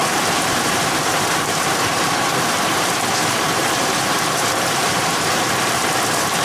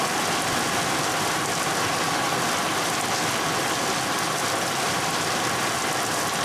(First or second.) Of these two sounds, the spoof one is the first